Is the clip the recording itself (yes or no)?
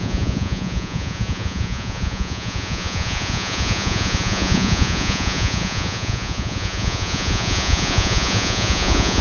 no